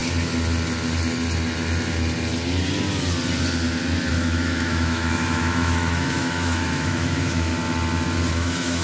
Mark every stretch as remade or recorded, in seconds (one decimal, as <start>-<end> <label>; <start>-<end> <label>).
0.0-4.1 recorded; 4.1-7.5 remade; 7.5-8.3 recorded; 8.3-8.8 remade